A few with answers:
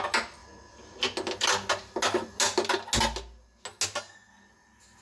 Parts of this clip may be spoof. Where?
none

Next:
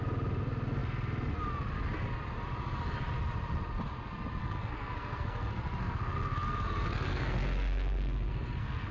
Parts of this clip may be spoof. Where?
4.4-8.9 (codec, SNAC)

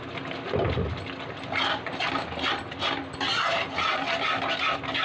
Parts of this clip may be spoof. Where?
none

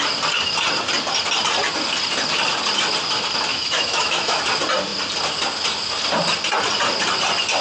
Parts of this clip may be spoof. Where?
3.5-4.4 (autoencoder, DAC-VAE)

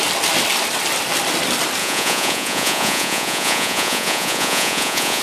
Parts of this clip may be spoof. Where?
1.8-5.2 (vocoder, Vocos)